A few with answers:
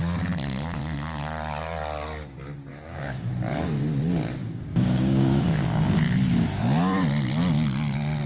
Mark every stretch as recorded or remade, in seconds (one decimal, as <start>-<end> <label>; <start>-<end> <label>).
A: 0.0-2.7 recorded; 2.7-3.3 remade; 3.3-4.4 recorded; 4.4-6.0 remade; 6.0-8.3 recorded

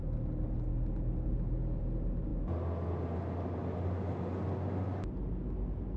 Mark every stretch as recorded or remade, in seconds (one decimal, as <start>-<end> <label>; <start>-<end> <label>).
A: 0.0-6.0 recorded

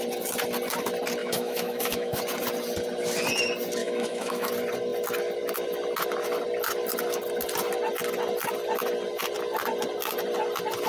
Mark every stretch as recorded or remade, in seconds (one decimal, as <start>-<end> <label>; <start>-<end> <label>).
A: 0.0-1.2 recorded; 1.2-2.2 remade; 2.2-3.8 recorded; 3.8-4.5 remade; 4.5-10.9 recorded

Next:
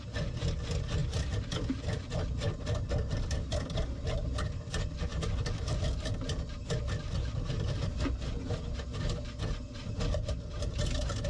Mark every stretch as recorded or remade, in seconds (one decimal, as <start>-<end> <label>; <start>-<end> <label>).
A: 0.0-11.3 recorded

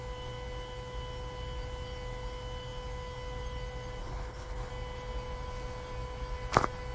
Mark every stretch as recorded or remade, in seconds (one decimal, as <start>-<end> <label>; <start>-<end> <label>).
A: 0.0-4.0 recorded; 4.0-4.7 remade; 4.7-6.9 recorded